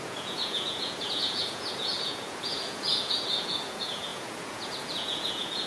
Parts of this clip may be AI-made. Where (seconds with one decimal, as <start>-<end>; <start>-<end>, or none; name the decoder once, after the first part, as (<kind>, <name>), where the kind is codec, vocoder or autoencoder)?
0.0-5.7 (vocoder, Vocos)